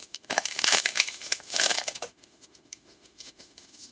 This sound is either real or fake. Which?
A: fake